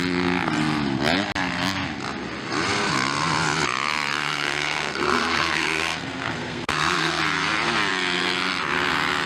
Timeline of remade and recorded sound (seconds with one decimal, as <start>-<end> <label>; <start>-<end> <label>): 0.0-4.2 recorded; 4.2-7.2 remade; 7.2-9.3 recorded